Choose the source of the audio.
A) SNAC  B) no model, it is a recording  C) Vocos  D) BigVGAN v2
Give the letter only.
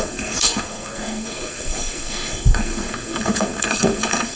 A